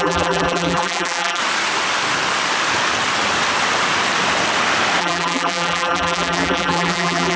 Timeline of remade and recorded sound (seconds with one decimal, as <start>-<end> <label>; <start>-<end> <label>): 0.0-1.4 remade; 1.4-5.0 recorded; 5.0-7.4 remade